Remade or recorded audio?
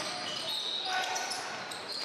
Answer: recorded